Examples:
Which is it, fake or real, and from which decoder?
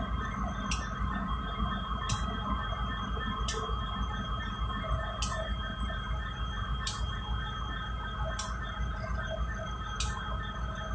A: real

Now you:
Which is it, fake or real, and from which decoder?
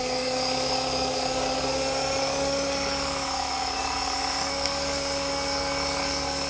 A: fake, codec, DAC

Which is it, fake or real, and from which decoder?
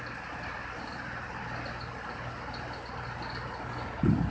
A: real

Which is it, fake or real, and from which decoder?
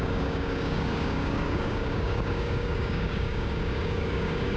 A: fake, codec, DAC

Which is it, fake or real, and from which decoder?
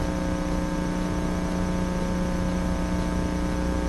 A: real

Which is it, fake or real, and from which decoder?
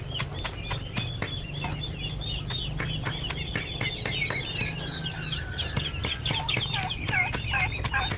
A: real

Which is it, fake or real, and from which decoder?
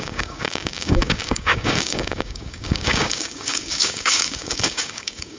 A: fake, codec, DAC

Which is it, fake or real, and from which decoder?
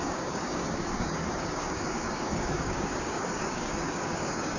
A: fake, codec, DAC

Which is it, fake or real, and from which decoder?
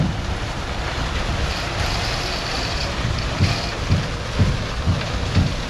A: real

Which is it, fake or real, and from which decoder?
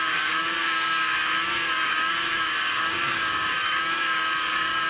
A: fake, codec, DAC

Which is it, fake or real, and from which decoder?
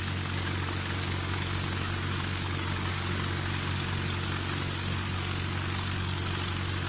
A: fake, codec, DAC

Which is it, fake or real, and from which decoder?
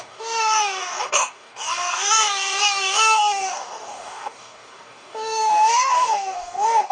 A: fake, codec, DAC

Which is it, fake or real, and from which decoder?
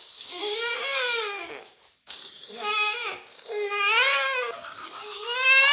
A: fake, codec, DAC